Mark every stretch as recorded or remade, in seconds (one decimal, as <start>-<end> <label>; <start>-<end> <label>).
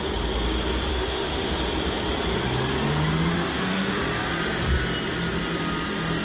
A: 0.0-0.9 recorded; 0.9-1.6 remade; 1.6-3.3 recorded; 3.3-4.0 remade; 4.0-6.2 recorded